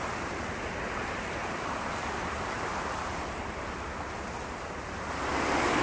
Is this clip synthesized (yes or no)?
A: no